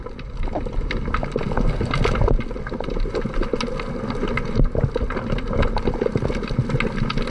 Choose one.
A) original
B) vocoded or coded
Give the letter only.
A